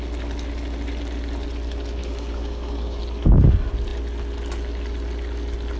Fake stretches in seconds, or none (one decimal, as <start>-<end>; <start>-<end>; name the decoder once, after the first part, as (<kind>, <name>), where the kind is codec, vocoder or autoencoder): 2.0-3.0 (codec, DAC)